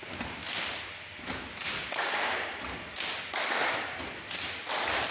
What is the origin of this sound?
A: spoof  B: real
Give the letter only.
B